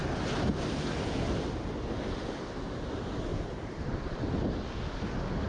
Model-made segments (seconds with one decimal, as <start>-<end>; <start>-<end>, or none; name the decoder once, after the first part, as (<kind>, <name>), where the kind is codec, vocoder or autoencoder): 3.3-4.1 (vocoder, BigVGAN v2)